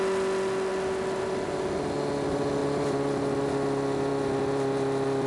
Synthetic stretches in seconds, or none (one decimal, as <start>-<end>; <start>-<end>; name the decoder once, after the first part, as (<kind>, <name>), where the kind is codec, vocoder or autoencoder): none